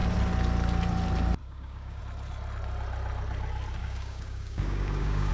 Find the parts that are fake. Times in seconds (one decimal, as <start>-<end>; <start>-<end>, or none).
1.4-2.0; 3.8-5.3